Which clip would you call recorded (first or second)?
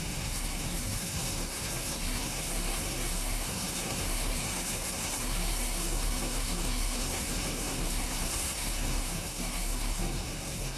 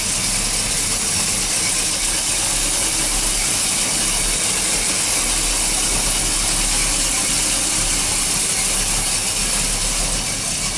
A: second